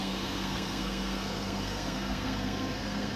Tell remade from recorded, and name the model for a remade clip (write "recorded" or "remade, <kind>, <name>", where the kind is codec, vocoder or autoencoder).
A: remade, codec, SNAC